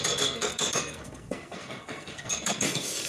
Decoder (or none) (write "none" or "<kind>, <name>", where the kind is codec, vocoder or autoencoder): codec, SNAC